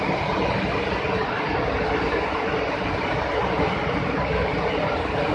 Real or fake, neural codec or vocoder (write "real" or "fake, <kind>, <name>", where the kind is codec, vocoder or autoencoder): real